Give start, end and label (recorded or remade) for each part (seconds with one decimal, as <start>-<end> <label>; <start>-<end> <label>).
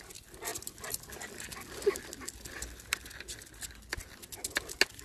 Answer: 0.0-5.0 recorded